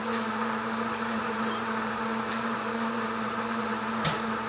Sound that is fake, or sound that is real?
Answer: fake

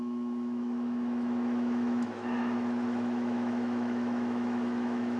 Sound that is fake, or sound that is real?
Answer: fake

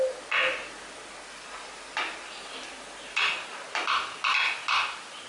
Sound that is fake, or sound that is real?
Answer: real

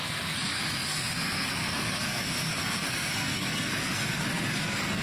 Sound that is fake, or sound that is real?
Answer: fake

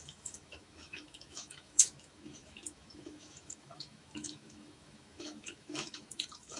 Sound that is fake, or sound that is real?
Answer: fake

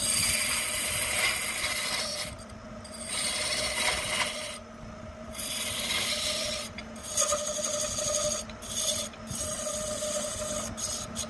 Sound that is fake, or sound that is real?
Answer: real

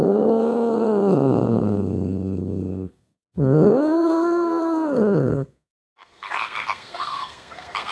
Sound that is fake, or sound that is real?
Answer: fake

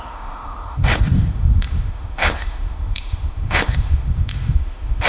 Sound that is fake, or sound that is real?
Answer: fake